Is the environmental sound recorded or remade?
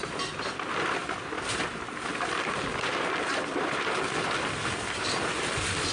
recorded